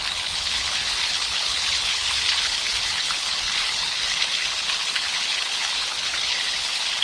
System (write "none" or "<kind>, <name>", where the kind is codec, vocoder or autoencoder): codec, HILCodec